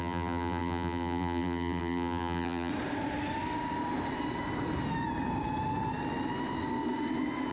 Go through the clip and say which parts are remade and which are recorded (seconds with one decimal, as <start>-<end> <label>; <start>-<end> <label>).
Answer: 0.0-2.7 remade; 2.7-7.5 recorded